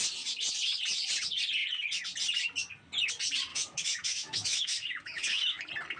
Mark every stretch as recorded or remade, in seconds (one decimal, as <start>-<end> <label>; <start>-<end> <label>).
0.0-3.5 recorded; 3.5-5.6 remade; 5.6-6.0 recorded